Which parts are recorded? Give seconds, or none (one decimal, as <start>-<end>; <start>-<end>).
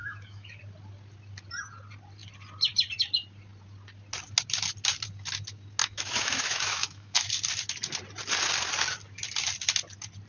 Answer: 0.6-5.8; 7.3-10.3